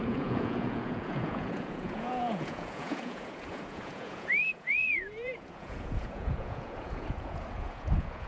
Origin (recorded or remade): remade